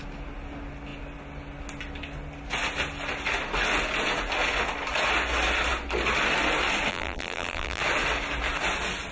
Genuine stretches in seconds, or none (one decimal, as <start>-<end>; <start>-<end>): 0.0-6.9; 7.8-9.1